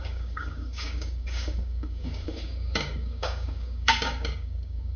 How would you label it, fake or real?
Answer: fake